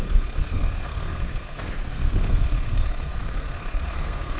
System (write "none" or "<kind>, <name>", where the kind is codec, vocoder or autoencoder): codec, SNAC